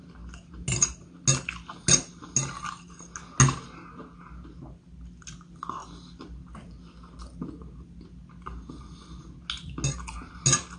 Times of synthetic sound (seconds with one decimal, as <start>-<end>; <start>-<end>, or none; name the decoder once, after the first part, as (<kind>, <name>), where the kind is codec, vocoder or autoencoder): none